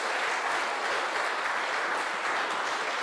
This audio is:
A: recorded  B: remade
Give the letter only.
A